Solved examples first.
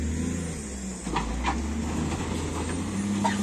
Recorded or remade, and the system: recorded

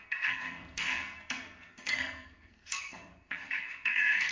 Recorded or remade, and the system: remade, codec, SNAC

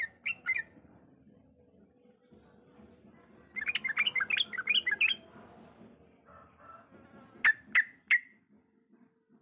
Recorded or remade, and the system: recorded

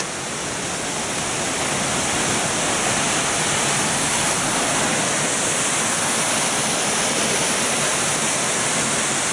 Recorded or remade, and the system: recorded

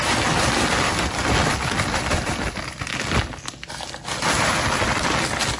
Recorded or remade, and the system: recorded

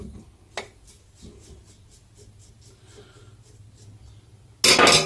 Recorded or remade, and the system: recorded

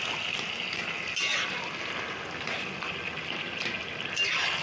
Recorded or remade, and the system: recorded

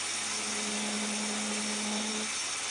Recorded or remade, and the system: recorded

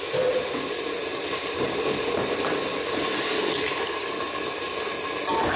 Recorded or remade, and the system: recorded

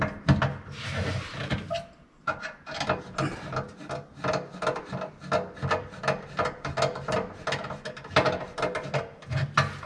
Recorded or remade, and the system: recorded